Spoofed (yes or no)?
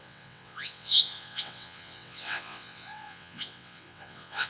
yes